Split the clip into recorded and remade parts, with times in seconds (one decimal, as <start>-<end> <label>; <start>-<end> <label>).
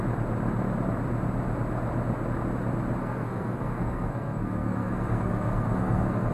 0.0-3.0 recorded; 3.0-6.3 remade